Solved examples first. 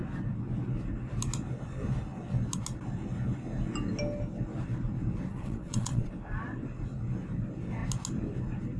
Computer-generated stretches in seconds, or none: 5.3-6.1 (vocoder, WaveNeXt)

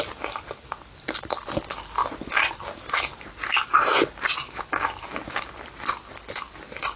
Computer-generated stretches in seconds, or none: none

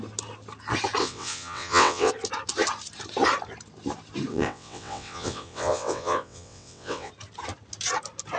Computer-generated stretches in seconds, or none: 1.0-2.1 (vocoder, WaveNeXt); 4.3-7.1

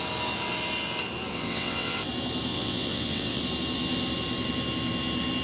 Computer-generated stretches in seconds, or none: 1.3-2.1 (vocoder, WaveNeXt); 2.5-3.4

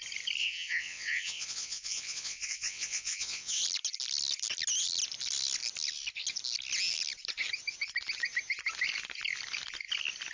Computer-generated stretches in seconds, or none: 0.4-3.6 (vocoder, WaveNeXt)

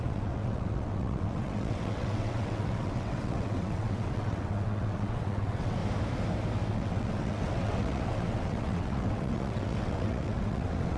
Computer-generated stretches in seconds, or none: 0.0-5.8 (vocoder, WaveNeXt); 6.7-11.0

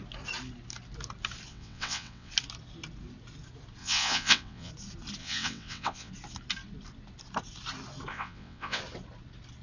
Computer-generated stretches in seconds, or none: 1.5-2.3 (vocoder, WaveNeXt); 3.8-4.7; 5.2-6.1; 8.1-8.8